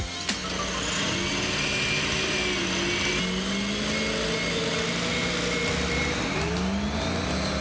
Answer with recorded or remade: recorded